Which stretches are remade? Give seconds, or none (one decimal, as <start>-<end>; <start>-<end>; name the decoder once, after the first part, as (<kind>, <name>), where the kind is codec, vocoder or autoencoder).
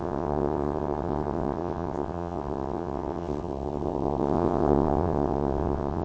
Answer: 0.0-6.0 (vocoder, WaveNeXt)